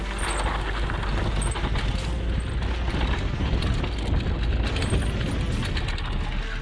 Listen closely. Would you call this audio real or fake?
real